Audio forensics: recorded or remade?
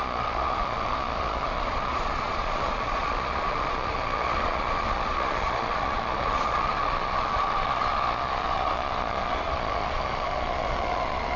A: remade